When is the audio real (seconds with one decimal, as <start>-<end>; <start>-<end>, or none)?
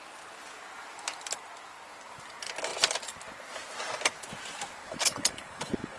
0.0-4.8